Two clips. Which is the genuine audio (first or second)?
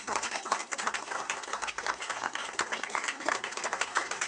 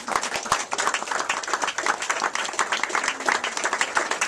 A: second